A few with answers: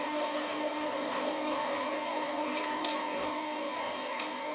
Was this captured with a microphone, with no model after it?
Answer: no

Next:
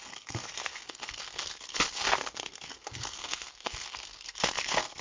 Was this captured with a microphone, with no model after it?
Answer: no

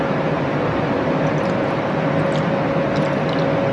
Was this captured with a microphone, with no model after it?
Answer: yes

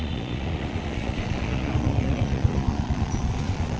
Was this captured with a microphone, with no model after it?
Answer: no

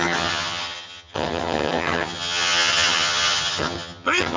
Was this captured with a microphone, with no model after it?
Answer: no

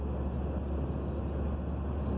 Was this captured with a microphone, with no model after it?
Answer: yes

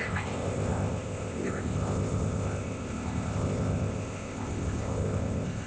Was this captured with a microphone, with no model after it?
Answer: no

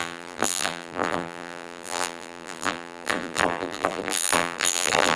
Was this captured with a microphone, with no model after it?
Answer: no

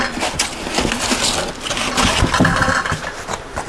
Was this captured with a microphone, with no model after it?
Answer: yes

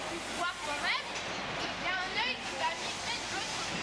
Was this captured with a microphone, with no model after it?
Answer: yes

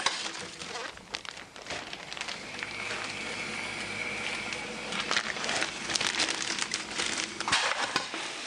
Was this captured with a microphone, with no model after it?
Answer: yes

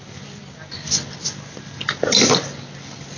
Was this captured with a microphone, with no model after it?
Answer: yes